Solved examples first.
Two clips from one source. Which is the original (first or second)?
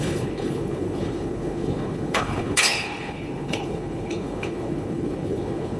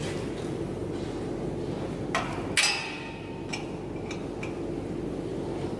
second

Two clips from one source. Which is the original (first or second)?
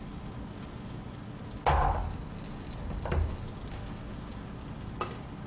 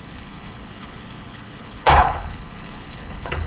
first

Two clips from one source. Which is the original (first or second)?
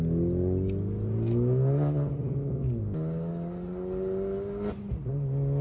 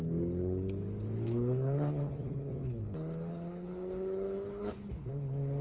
first